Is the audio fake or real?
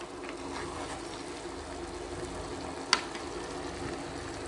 real